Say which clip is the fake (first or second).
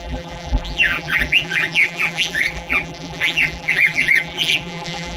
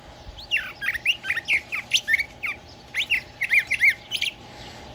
first